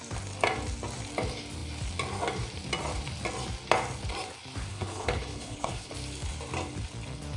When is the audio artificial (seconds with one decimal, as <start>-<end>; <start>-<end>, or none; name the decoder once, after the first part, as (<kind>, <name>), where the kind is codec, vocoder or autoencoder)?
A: 4.7-5.9 (codec, HILCodec)